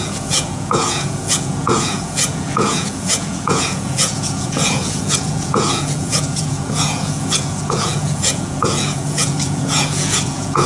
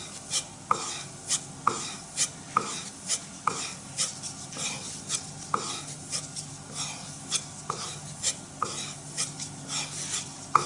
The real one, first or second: second